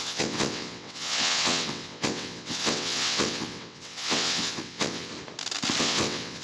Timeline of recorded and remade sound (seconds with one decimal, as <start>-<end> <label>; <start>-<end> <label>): 0.0-5.1 remade; 5.1-5.8 recorded; 5.8-6.4 remade